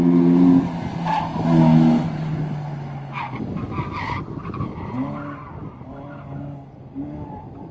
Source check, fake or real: real